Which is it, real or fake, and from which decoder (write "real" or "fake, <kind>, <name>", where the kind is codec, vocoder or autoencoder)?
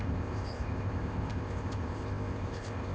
fake, codec, ZipCodec